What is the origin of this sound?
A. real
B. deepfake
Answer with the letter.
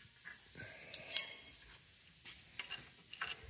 A